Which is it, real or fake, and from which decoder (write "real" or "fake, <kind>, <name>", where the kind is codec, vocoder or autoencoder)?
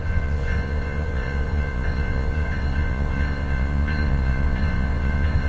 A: fake, vocoder, Vocos